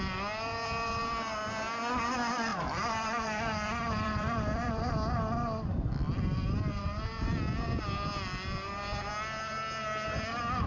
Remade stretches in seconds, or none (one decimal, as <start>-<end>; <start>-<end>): 2.5-4.9